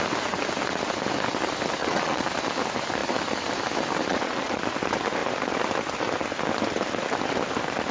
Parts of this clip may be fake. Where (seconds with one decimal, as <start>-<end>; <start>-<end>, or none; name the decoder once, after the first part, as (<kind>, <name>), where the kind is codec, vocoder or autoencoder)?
1.8-2.3 (vocoder, Vocos); 4.1-4.6

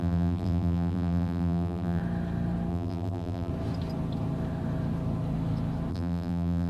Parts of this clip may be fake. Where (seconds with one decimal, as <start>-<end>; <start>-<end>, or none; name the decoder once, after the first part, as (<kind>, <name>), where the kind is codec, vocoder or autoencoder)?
0.0-2.0 (vocoder, BigVGAN v2); 2.7-3.5; 5.9-6.7

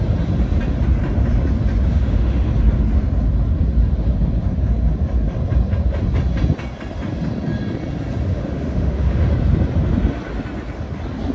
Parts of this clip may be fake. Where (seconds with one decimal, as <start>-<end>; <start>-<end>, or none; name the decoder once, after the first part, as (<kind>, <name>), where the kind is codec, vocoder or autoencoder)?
1.9-2.5 (autoencoder, DAC-VAE); 8.3-9.3

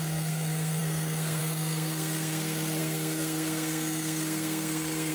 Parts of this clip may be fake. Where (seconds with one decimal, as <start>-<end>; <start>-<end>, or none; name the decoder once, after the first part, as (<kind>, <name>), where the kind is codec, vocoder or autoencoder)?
0.0-5.1 (codec, SNAC)

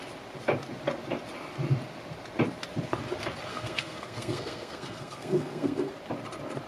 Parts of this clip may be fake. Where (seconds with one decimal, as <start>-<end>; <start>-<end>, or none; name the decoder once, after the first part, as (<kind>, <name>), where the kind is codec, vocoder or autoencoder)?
3.5-5.9 (codec, SNAC)